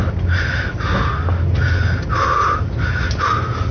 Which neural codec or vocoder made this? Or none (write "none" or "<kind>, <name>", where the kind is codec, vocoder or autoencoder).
none